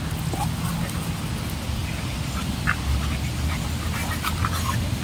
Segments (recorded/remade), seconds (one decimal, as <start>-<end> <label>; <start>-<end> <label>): 0.0-5.0 recorded